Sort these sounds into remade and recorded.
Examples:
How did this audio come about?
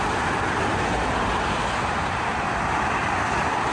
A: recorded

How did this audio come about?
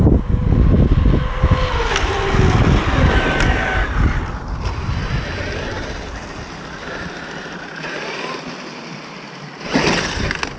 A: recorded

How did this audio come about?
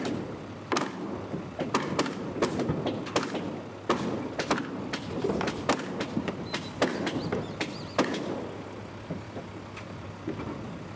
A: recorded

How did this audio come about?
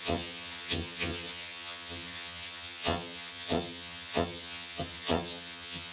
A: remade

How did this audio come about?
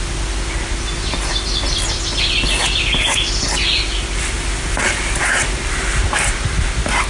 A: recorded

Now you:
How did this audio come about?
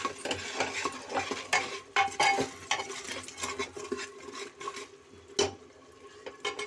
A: recorded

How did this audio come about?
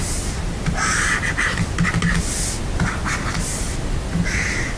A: recorded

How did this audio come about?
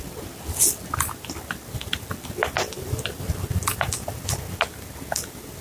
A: recorded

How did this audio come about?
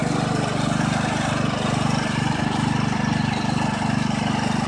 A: recorded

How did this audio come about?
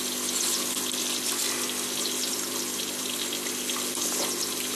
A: recorded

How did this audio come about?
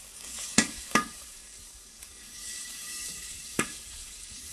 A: remade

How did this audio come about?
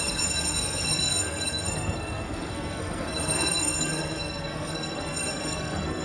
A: remade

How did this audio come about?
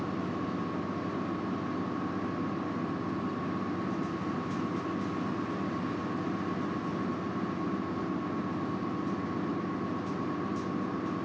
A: recorded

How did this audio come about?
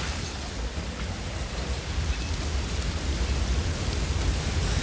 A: recorded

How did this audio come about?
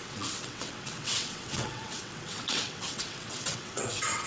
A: remade